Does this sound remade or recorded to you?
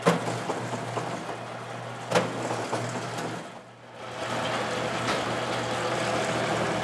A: recorded